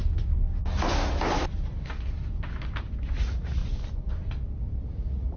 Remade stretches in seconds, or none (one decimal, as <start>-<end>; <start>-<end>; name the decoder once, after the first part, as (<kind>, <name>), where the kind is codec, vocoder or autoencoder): 3.2-3.6 (vocoder, Vocos); 4.9-5.4

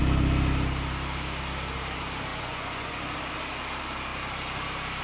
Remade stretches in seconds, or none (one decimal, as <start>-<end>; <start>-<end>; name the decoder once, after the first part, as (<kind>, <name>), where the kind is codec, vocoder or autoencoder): 2.3-3.0 (vocoder, Vocos)

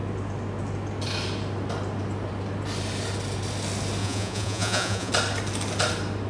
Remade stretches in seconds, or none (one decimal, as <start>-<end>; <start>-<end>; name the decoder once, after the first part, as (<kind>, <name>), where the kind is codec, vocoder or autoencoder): 4.0-5.1 (vocoder, Vocos)